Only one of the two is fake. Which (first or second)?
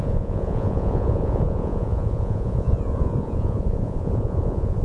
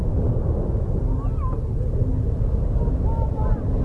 first